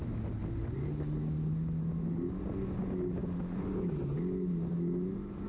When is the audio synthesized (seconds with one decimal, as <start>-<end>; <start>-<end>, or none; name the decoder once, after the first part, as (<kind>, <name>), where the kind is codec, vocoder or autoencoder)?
none